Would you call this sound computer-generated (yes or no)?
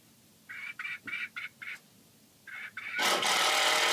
no